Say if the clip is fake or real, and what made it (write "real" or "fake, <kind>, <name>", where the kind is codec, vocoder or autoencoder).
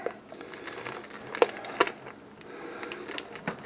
real